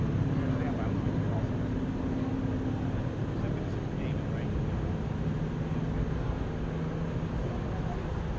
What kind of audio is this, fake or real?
real